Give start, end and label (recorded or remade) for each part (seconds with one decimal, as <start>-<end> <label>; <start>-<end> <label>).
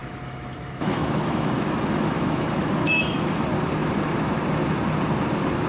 0.0-3.4 remade; 3.4-5.7 recorded